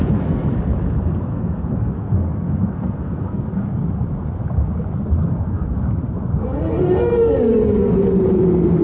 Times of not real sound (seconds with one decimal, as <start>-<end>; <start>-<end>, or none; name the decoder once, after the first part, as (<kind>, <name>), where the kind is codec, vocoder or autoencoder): 0.0-0.5 (codec, SNAC); 1.3-3.8; 5.3-5.9